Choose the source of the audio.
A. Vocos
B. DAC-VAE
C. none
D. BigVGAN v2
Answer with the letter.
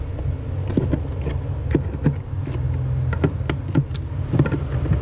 C